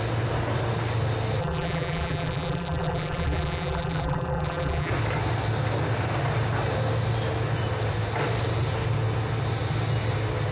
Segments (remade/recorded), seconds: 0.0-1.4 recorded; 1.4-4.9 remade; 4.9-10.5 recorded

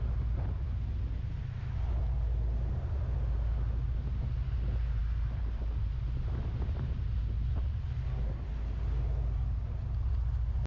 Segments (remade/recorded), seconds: 0.0-10.7 recorded

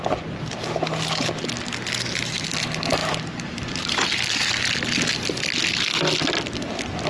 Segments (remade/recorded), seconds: 0.0-3.0 recorded; 3.0-4.5 remade; 4.5-7.1 recorded

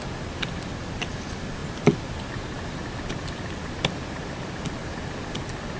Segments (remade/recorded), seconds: 0.0-5.8 recorded

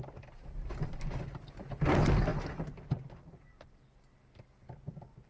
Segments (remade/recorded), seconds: 0.0-5.3 recorded

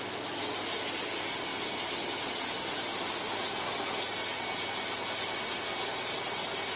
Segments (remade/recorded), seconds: 0.0-6.8 recorded

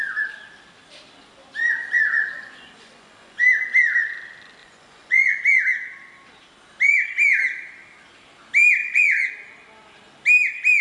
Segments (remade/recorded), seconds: 0.0-1.8 recorded; 1.8-3.4 remade; 3.4-4.6 recorded; 4.6-5.4 remade; 5.4-8.8 recorded; 8.8-9.3 remade; 9.3-10.8 recorded